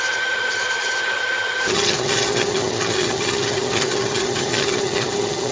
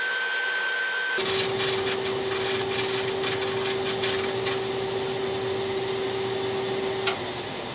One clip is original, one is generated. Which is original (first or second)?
second